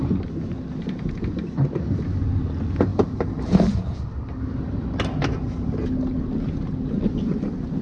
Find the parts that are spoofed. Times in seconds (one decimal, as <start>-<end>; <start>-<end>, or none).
none